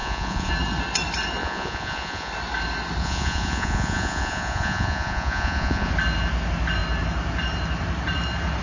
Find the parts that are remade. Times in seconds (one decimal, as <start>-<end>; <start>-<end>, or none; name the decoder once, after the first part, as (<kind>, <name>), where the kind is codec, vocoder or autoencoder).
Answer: 0.0-0.5 (vocoder, Vocos); 1.4-2.3; 3.0-5.9